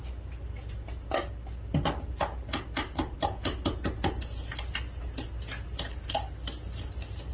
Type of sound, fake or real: real